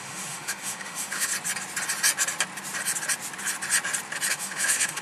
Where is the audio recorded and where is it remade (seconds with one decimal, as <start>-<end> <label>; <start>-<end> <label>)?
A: 0.0-1.3 remade; 1.3-4.3 recorded; 4.3-5.0 remade